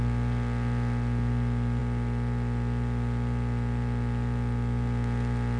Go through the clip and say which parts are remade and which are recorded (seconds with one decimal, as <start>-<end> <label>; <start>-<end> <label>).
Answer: 0.0-5.6 recorded